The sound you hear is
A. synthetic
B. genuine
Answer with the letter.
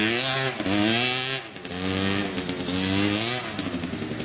B